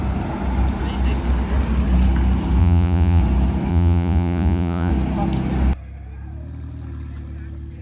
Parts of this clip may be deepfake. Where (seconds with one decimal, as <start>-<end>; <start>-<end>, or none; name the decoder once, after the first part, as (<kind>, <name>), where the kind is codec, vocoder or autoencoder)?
2.6-3.2 (vocoder, Vocos); 3.7-4.9